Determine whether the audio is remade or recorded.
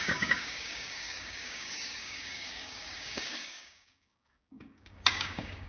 remade